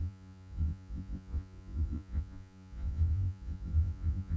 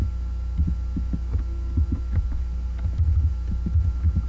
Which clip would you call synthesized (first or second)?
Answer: first